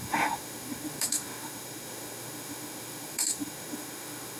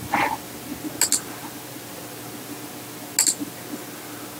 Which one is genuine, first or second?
second